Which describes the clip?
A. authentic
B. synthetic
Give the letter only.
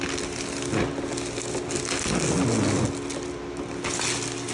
A